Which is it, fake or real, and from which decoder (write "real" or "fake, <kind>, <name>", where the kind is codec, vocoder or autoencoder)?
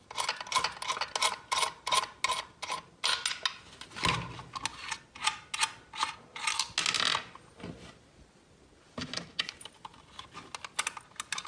real